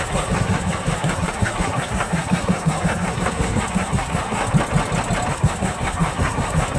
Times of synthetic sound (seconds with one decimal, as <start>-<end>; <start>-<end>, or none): 0.0-4.4; 5.3-6.8